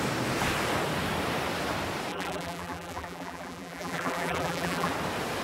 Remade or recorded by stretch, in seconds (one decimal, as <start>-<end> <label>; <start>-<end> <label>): 0.0-2.1 recorded; 2.1-4.9 remade; 4.9-5.4 recorded